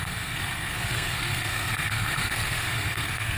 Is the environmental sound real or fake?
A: fake